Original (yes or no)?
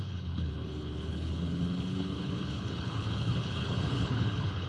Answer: no